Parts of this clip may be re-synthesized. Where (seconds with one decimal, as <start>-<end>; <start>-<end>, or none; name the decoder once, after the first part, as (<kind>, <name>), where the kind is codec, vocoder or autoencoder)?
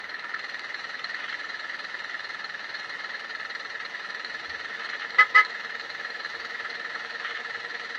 0.0-3.3 (autoencoder, DAC-VAE); 3.9-8.0